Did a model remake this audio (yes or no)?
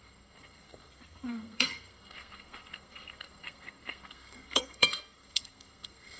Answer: yes